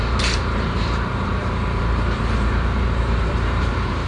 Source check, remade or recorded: remade